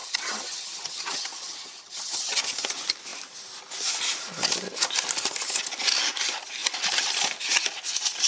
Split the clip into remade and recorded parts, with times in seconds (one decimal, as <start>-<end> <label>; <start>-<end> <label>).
0.0-2.4 remade; 2.4-8.3 recorded